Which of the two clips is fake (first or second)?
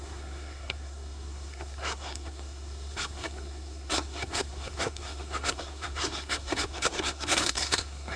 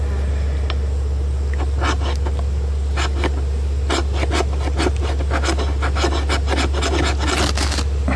first